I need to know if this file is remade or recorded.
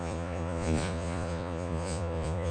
remade